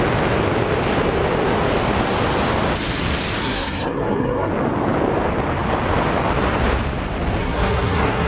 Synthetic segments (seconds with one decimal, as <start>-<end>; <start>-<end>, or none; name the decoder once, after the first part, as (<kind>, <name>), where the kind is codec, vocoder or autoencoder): 3.4-4.5 (codec, SNAC); 7.4-8.3